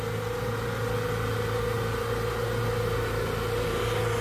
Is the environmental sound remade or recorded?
recorded